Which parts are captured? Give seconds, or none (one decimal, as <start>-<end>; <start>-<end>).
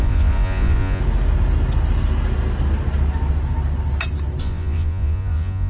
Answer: 1.0-4.4